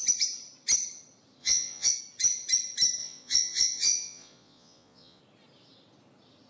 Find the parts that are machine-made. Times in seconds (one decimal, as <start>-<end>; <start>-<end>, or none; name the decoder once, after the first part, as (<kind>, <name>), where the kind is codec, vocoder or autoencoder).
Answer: 1.4-2.0 (vocoder, Vocos); 3.0-5.2